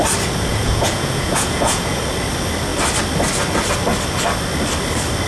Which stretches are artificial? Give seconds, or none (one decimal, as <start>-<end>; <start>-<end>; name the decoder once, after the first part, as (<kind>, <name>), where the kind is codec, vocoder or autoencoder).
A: 0.5-2.0 (vocoder, Vocos)